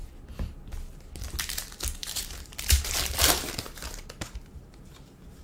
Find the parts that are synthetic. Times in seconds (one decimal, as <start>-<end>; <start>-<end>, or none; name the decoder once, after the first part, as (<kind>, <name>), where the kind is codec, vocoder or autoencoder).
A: 2.0-5.4 (vocoder, BigVGAN v2)